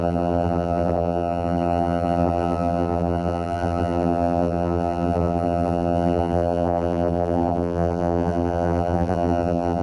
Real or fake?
fake